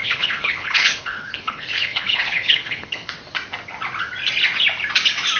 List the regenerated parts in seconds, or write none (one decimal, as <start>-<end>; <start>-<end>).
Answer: 0.0-3.1

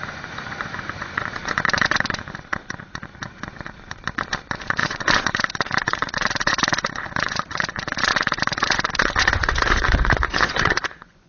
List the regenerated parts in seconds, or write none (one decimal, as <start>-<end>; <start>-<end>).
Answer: 0.0-11.3

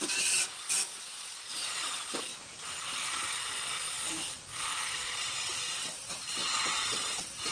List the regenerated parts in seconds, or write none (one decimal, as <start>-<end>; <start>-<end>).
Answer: 0.0-2.3; 4.9-7.5